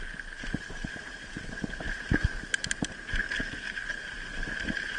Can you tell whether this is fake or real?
real